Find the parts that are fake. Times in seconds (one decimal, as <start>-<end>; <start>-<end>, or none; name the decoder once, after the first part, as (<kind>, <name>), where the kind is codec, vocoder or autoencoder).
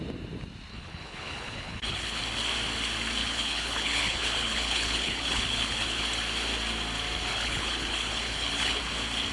0.7-2.2 (codec, HILCodec); 3.2-6.0; 7.3-8.8